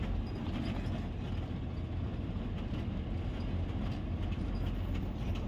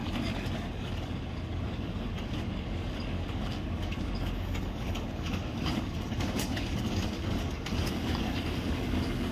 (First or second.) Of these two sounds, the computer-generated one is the second